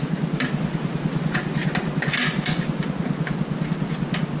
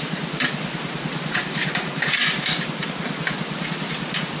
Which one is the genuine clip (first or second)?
first